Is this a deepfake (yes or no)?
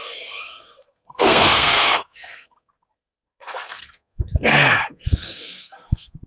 yes